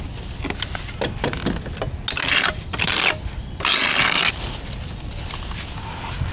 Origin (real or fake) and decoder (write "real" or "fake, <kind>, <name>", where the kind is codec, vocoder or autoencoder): real